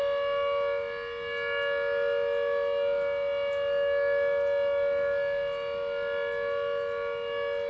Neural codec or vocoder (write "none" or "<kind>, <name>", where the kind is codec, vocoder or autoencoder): none